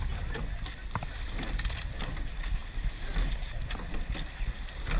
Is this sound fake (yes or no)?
no